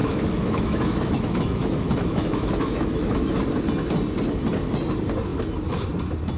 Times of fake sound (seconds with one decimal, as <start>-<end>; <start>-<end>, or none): 0.0-3.3